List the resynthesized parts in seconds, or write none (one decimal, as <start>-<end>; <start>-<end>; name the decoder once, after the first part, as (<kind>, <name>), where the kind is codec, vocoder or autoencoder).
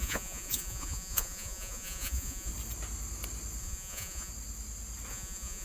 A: 0.0-2.5 (vocoder, Vocos); 3.6-4.3; 5.1-5.6